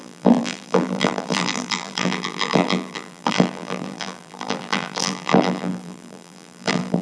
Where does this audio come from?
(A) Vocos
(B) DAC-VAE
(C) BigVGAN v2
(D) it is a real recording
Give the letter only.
C